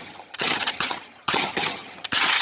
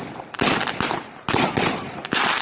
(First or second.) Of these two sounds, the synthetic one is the first